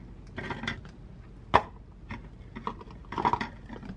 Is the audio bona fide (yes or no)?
yes